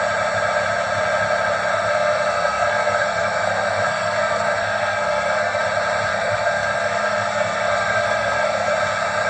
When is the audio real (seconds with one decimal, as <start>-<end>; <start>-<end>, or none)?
0.0-1.7; 5.6-6.1; 8.7-9.3